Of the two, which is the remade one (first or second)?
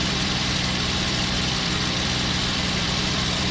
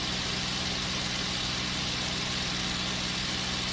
first